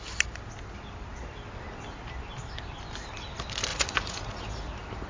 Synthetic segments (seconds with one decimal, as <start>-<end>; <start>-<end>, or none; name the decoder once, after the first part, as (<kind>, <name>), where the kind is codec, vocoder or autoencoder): 3.7-4.4 (vocoder, Vocos)